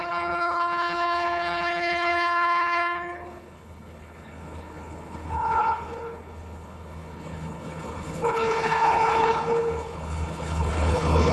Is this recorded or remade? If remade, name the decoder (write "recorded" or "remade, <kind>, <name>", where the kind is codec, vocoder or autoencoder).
remade, codec, HILCodec